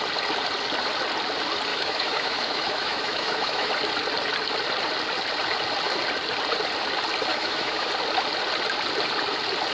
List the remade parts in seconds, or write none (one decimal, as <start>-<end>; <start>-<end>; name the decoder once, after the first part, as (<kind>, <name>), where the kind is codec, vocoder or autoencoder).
1.7-3.7 (autoencoder, DAC-VAE); 7.3-7.9